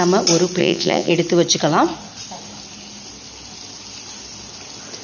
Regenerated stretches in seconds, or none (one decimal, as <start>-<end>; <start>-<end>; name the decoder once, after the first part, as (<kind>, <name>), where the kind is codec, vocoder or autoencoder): 0.6-1.1 (vocoder, Vocos)